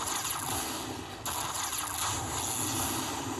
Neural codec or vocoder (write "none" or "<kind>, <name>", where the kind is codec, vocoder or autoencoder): none